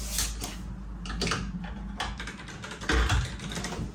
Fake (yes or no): no